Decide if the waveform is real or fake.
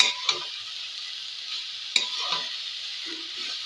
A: real